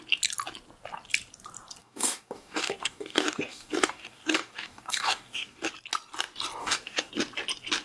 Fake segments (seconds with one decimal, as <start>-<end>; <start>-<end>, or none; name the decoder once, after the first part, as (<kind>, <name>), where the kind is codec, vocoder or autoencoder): 1.8-5.7 (codec, DAC); 6.6-7.1